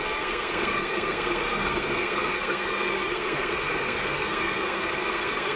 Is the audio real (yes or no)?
no